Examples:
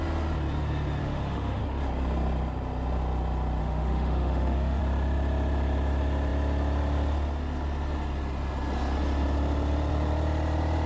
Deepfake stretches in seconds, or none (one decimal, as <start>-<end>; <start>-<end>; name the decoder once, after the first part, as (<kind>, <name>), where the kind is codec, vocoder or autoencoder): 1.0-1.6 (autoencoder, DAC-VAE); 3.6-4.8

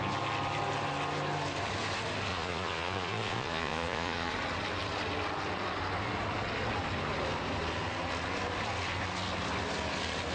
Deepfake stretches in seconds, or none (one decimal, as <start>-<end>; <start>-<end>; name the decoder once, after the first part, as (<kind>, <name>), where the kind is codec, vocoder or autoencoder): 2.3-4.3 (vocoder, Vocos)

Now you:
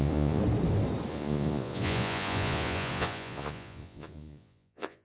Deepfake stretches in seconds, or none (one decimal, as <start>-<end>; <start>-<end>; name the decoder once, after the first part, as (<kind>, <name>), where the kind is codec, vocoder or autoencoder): 0.0-0.4 (vocoder, Vocos); 1.1-5.0

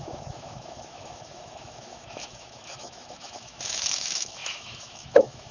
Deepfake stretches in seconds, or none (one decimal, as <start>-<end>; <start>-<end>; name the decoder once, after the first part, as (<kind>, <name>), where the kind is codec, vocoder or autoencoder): 0.0-5.5 (autoencoder, DAC-VAE)

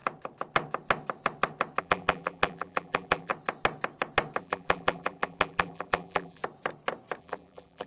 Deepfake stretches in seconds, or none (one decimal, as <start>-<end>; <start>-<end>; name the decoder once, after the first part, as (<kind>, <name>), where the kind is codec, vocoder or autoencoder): 1.8-3.3 (vocoder, BigVGAN v2); 4.4-6.4; 7.2-7.9

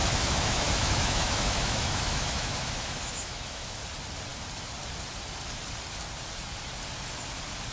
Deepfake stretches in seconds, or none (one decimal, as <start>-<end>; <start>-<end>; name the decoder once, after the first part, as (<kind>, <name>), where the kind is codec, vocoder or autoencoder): 0.0-3.8 (autoencoder, DAC-VAE)

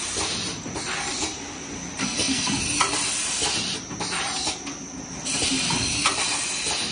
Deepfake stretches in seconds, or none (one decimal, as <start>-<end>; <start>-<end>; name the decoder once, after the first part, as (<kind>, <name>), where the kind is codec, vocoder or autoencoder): 2.0-2.6 (codec, SNAC)

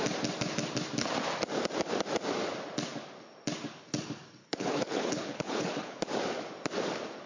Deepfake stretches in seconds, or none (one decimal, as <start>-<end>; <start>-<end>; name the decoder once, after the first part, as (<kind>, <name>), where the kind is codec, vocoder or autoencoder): 4.4-6.0 (codec, HILCodec)